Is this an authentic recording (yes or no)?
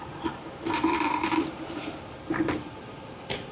no